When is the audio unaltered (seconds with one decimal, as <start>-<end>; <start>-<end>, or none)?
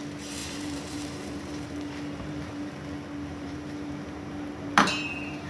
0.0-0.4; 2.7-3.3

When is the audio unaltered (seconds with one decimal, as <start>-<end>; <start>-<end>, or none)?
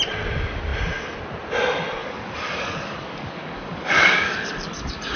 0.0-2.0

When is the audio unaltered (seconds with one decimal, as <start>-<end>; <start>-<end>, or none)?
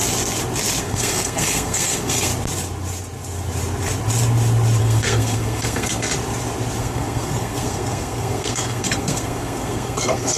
0.0-0.8; 2.3-4.8; 6.1-6.8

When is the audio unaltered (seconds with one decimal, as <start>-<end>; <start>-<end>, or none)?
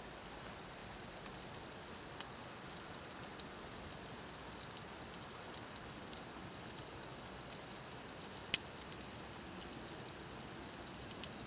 0.0-11.5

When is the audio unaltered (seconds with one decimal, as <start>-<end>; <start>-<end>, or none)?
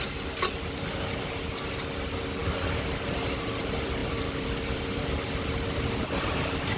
0.0-4.0; 5.0-6.8